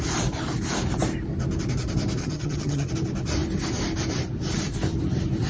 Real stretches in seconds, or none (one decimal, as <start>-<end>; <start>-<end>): 0.0-2.2; 2.9-5.5

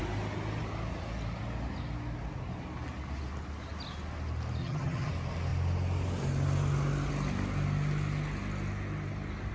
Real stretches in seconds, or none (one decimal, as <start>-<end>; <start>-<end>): 0.0-4.6; 5.1-9.5

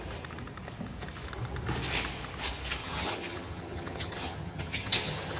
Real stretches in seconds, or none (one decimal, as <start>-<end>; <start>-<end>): 0.0-2.8

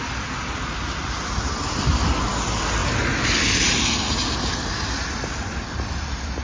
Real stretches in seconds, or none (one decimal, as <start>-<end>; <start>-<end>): 0.0-6.4

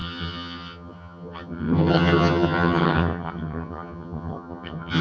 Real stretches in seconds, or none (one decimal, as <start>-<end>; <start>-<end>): none

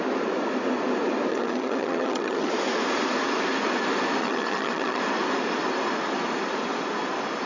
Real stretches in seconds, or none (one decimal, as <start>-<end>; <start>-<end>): 0.0-1.3; 2.5-4.2; 5.0-7.5